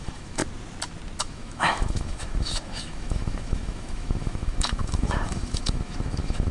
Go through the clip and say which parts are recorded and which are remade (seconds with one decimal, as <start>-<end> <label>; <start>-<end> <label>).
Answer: 0.0-0.4 remade; 0.4-1.2 recorded; 1.2-6.5 remade